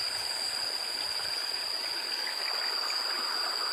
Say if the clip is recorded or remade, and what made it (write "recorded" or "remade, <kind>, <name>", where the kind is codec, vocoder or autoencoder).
recorded